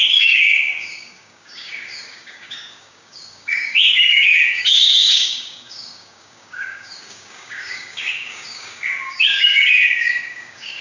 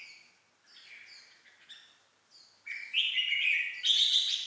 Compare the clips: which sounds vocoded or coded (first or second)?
first